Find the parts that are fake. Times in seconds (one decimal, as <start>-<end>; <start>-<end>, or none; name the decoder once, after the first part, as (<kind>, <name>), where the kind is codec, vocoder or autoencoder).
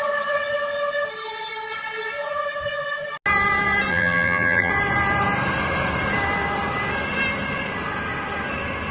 3.9-4.7 (vocoder, BigVGAN v2)